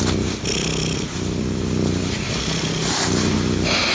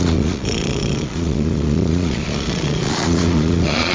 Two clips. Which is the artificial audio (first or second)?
second